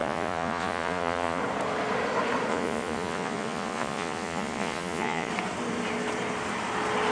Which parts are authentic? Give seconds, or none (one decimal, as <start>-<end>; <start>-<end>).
1.4-2.5; 5.3-7.1